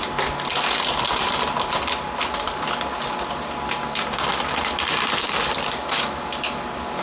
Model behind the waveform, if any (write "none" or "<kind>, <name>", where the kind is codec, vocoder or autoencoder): vocoder, BigVGAN v2